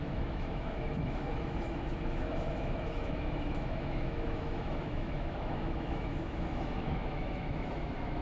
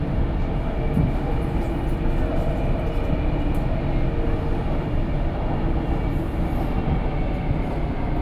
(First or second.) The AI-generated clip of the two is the first